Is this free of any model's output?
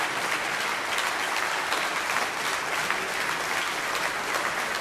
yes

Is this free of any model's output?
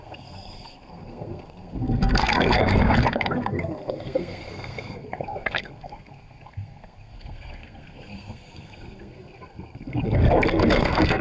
no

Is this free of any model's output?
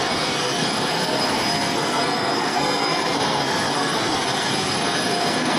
no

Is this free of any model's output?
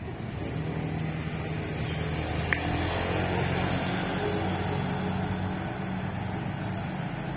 yes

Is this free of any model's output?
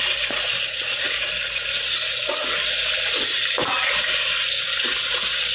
yes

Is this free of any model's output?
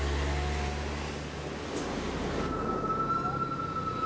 yes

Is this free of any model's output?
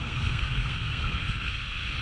no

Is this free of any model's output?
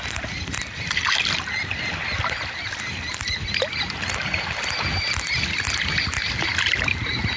yes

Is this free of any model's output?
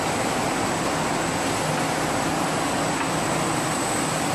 yes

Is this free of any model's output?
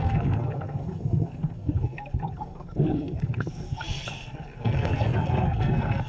no